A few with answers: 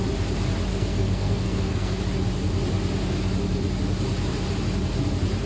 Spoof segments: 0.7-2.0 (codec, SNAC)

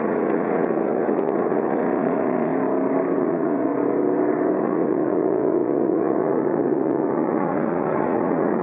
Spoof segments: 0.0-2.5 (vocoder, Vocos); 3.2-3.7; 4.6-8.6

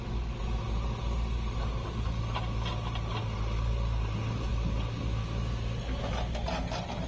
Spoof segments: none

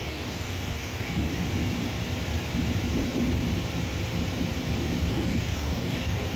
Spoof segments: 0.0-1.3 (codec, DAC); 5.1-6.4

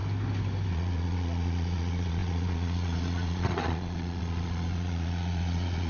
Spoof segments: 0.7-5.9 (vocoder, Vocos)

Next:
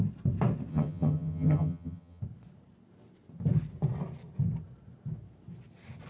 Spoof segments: 0.7-2.2 (vocoder, HiFi-GAN)

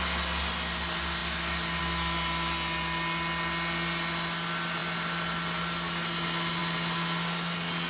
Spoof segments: none